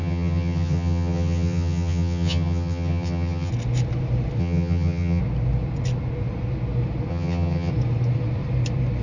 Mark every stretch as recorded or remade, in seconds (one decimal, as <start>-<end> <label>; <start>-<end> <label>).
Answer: 0.0-3.5 remade; 3.5-4.4 recorded; 4.4-5.2 remade; 5.2-7.1 recorded; 7.1-7.7 remade; 7.7-9.0 recorded